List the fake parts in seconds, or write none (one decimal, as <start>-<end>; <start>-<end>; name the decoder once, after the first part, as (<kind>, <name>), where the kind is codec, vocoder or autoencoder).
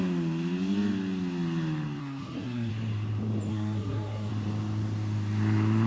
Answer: 2.0-2.7 (codec, SNAC); 3.5-4.3